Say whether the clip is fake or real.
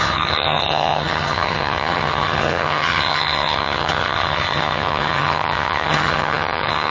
fake